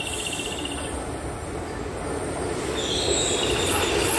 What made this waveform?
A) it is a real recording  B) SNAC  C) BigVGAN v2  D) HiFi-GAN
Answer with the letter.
A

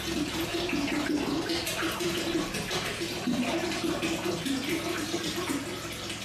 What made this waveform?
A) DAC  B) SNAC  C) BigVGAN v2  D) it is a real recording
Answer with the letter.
D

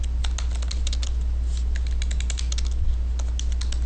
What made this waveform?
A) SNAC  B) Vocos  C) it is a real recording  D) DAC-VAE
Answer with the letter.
C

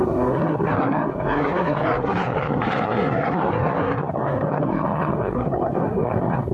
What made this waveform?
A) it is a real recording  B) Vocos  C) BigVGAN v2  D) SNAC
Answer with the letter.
D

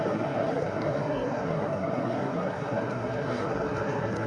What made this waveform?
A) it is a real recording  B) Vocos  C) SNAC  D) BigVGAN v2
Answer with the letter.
C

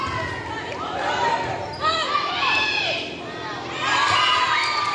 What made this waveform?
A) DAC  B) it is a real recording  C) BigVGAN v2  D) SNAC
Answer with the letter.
B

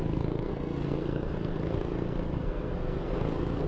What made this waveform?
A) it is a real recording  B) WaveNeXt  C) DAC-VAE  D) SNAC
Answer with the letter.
D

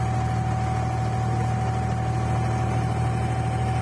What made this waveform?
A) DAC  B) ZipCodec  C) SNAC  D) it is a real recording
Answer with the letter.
D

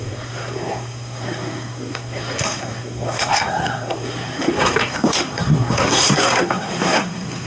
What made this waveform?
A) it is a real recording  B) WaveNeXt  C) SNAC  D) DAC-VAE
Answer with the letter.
C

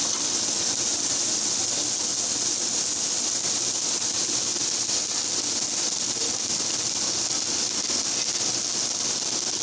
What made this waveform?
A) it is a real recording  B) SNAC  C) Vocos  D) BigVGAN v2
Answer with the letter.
A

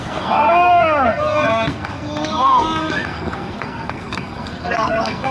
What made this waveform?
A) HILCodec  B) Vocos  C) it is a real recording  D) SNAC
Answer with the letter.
D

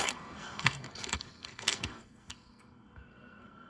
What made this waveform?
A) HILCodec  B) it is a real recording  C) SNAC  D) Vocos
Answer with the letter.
C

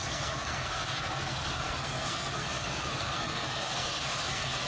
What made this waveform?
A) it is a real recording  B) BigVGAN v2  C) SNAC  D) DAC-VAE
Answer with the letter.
C